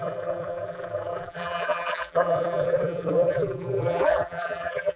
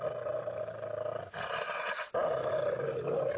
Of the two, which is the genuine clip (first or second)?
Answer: second